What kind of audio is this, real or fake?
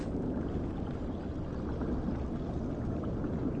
real